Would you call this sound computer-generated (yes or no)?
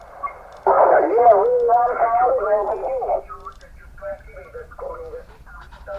no